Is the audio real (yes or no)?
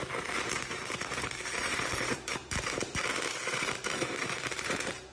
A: no